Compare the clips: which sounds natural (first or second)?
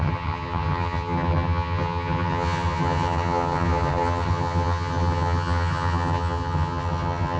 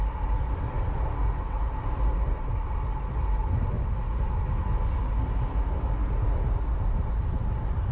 second